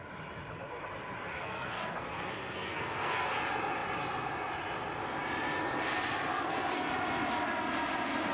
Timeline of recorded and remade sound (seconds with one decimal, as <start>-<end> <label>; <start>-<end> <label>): 0.0-1.3 recorded; 1.3-3.3 remade; 3.3-6.3 recorded; 6.3-6.9 remade; 6.9-8.3 recorded